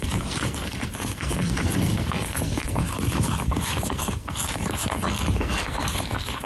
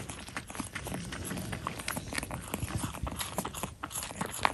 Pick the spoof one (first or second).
first